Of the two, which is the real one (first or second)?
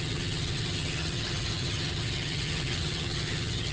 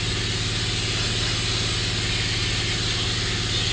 second